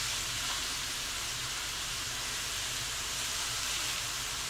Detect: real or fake fake